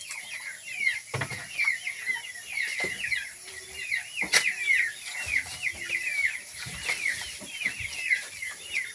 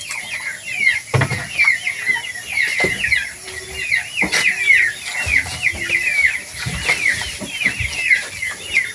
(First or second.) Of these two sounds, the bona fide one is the second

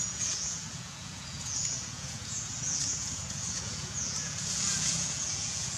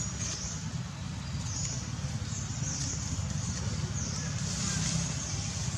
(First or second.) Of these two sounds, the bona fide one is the second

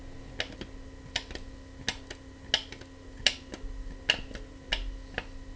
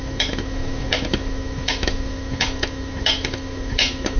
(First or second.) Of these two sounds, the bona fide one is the first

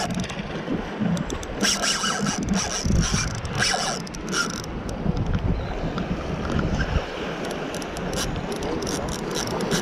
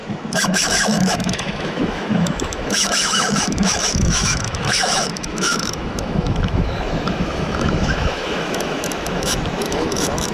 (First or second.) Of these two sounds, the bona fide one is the first